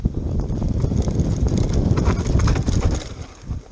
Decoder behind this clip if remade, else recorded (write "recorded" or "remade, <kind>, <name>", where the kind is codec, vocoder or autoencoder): recorded